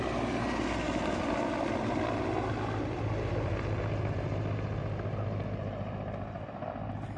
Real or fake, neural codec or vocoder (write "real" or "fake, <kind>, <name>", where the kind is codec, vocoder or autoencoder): real